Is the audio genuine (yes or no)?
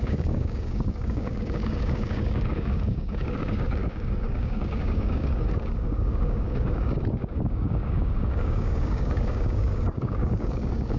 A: no